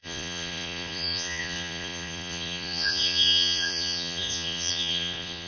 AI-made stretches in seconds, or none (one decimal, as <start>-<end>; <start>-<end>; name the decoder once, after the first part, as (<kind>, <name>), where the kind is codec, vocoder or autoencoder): 0.0-5.5 (vocoder, Vocos)